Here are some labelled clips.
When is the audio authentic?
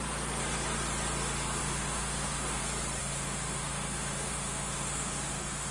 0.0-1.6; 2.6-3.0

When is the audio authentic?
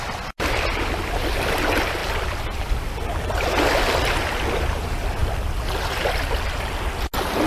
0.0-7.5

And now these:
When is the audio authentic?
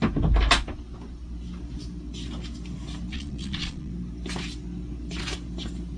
0.0-3.1; 3.9-6.0